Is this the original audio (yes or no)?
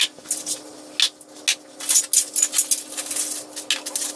yes